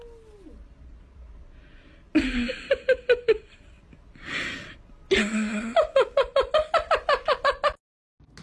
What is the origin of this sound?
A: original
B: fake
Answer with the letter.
A